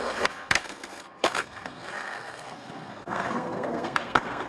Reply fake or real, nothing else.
fake